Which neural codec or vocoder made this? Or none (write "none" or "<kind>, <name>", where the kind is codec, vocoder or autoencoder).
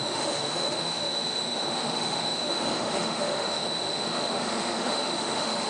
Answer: autoencoder, DAC-VAE